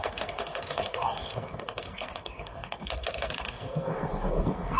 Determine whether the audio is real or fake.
fake